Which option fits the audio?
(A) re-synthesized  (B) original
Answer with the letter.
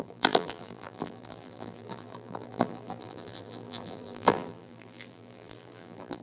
A